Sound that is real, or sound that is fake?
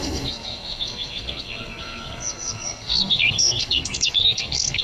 fake